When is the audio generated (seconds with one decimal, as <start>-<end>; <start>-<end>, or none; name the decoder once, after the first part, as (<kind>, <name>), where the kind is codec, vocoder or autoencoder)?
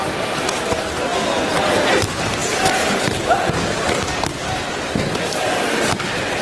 none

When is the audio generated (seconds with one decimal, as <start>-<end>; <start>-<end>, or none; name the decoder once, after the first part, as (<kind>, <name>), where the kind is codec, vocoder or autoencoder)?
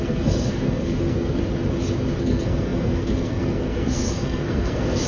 0.0-1.4 (codec, SNAC); 2.2-5.1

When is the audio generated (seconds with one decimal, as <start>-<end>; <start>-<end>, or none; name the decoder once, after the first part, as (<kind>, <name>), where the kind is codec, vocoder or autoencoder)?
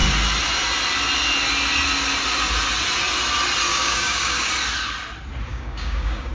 3.7-4.5 (codec, DAC); 5.5-6.3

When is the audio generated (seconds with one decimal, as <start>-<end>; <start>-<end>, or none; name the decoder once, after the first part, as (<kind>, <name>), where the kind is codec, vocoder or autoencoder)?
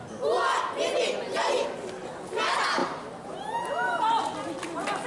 2.8-4.0 (vocoder, BigVGAN v2)